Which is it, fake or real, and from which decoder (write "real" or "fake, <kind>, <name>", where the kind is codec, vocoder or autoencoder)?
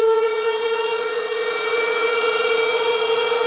fake, vocoder, Vocos